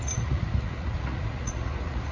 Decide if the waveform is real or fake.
fake